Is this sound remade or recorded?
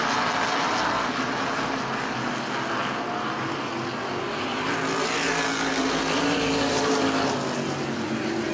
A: recorded